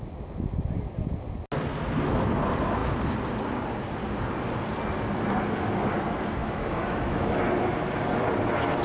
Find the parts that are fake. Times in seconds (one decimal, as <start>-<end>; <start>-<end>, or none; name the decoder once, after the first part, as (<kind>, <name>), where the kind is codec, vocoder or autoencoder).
6.4-7.4 (autoencoder, DAC-VAE)